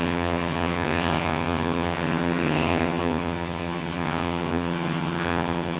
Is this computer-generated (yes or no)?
yes